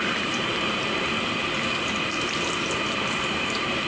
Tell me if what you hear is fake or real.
real